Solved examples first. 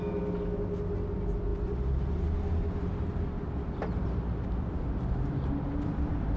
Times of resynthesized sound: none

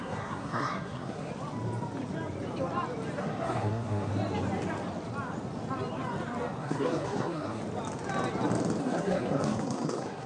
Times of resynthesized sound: 0.0-1.3; 3.2-4.1; 6.6-7.6; 8.8-10.3

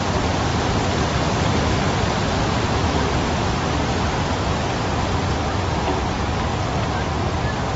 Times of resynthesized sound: none

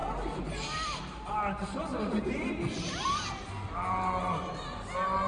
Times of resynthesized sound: none